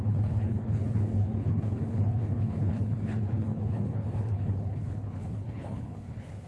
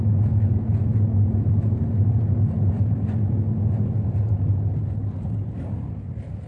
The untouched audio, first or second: second